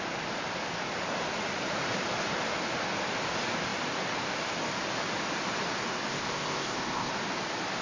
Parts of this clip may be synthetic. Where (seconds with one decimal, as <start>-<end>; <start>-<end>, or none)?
6.1-7.1